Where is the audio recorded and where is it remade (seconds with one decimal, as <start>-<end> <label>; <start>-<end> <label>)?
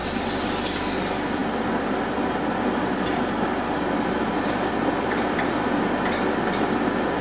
0.0-7.2 recorded